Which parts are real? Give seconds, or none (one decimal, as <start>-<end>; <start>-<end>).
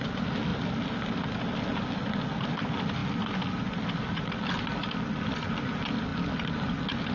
0.0-7.1